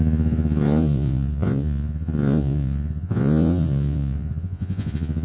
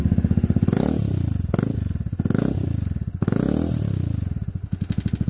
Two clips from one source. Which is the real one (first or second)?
second